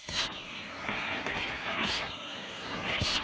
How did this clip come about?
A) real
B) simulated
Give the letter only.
B